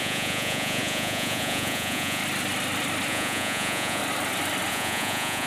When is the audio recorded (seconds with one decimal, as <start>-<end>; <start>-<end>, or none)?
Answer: 2.2-3.1; 4.0-4.7